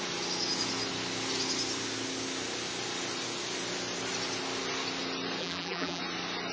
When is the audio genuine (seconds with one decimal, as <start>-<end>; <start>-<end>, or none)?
0.0-5.4; 6.0-6.5